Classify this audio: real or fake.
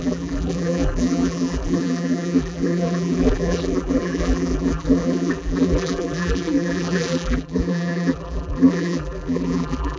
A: fake